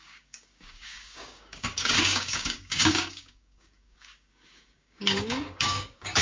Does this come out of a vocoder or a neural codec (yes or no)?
yes